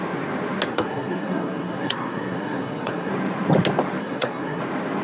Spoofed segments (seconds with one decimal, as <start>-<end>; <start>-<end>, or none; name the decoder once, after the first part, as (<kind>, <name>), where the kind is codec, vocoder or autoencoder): 0.7-3.1 (codec, SNAC); 4.0-4.6